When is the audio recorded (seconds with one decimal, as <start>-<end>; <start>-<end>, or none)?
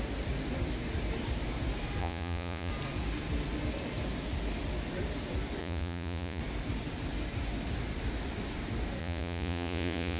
0.0-2.0; 2.7-5.6; 6.4-9.0